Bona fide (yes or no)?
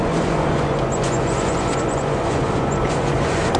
no